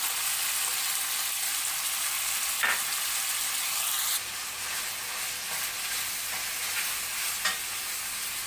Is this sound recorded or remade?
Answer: recorded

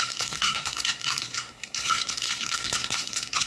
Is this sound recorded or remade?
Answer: remade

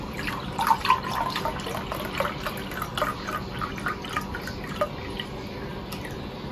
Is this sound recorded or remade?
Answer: recorded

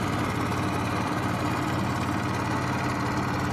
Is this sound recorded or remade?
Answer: recorded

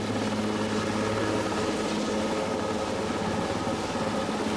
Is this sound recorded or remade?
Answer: recorded